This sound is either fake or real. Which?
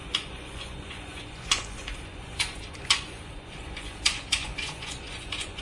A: fake